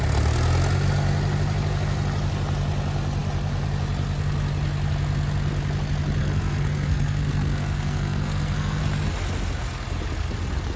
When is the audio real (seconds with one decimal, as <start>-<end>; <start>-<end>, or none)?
0.0-6.2; 8.8-10.8